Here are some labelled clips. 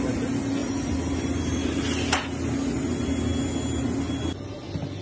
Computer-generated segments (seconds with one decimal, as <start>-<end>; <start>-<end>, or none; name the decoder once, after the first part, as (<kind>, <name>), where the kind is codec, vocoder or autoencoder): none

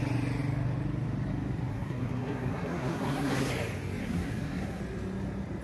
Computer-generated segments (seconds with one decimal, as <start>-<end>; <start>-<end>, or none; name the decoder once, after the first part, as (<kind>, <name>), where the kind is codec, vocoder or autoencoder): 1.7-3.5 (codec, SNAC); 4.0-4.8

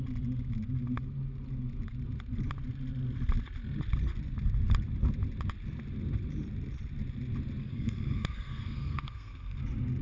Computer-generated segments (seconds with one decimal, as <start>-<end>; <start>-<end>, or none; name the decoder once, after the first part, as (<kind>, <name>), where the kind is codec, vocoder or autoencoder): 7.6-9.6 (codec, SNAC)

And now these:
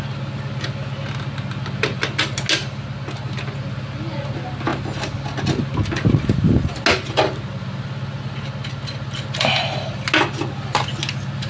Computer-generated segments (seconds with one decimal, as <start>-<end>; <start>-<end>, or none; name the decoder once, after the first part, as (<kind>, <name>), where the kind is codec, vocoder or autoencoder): none